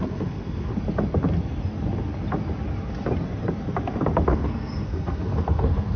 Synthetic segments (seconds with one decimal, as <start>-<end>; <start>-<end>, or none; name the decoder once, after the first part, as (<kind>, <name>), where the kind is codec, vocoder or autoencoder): 0.0-0.7 (codec, SNAC); 4.3-6.0